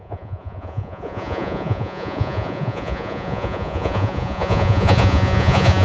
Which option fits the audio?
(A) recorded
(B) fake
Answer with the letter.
B